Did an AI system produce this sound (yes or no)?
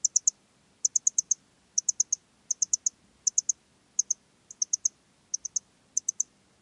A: no